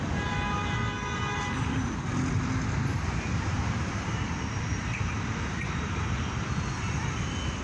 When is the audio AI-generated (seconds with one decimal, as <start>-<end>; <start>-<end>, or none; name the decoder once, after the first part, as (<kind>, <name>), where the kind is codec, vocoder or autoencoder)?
2.9-6.9 (vocoder, BigVGAN v2)